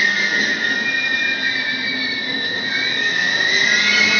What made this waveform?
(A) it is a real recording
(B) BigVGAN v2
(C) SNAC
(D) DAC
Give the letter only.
A